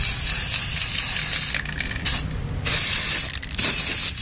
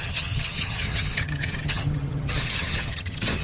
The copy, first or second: second